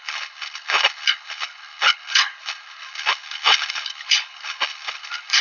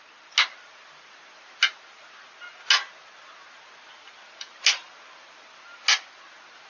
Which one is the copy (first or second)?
first